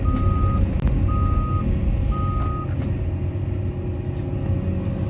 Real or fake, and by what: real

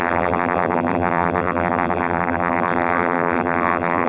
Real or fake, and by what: fake, vocoder, BigVGAN v2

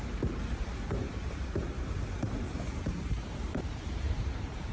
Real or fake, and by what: fake, vocoder, BigVGAN v2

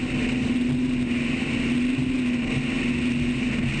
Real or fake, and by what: real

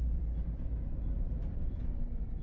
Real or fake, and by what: fake, vocoder, BigVGAN v2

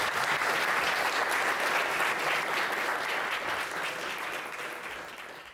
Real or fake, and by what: real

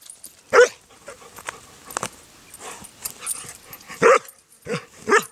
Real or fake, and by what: real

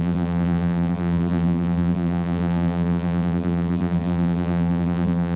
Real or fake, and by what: fake, vocoder, BigVGAN v2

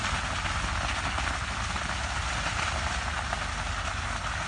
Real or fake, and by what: real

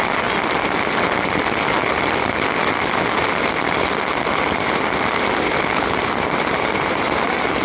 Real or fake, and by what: real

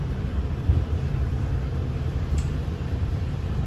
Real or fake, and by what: fake, vocoder, BigVGAN v2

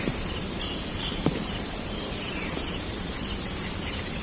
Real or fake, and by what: fake, vocoder, BigVGAN v2